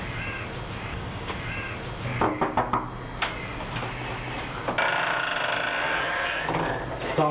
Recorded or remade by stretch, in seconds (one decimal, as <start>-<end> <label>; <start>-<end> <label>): 0.0-0.9 recorded; 0.9-1.4 remade; 1.4-7.3 recorded